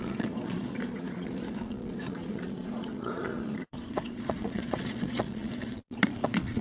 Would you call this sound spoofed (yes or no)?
yes